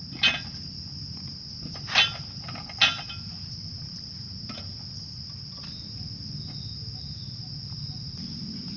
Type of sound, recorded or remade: recorded